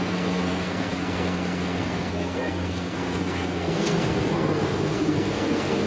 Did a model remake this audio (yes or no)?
yes